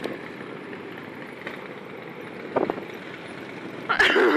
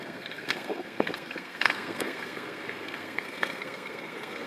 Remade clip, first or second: second